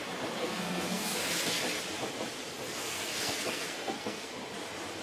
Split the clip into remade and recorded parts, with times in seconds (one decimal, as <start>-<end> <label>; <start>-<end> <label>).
0.0-0.4 recorded; 0.4-1.6 remade; 1.6-2.8 recorded; 2.8-4.3 remade; 4.3-5.0 recorded